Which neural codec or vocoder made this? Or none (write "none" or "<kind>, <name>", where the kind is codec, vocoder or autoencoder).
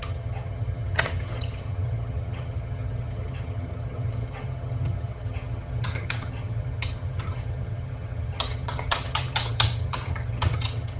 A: vocoder, HiFi-GAN